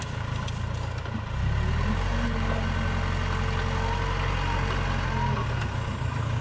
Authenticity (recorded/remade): recorded